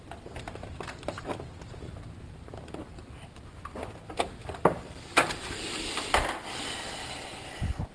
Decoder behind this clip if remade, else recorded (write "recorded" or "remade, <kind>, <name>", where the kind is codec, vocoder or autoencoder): recorded